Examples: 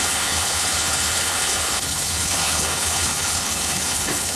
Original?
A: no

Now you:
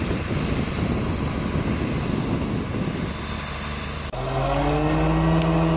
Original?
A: yes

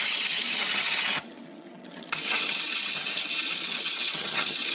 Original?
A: no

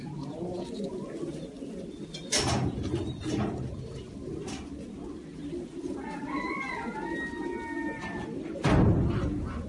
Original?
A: yes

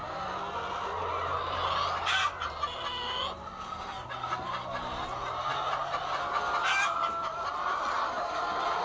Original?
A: yes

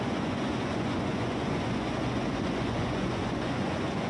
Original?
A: no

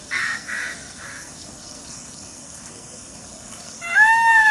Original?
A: no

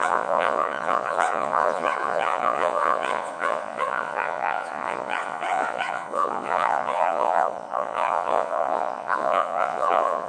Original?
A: no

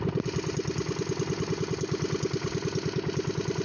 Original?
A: yes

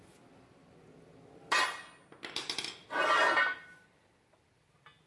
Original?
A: yes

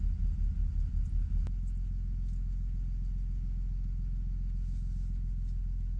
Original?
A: yes